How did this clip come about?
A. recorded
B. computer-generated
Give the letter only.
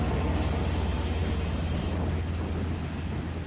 A